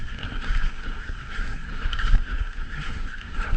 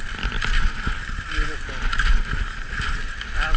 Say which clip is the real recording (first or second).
second